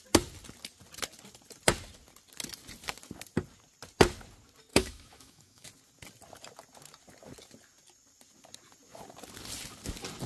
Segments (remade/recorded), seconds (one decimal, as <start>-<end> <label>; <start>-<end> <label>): 0.0-4.7 recorded; 4.7-5.7 remade; 5.7-10.3 recorded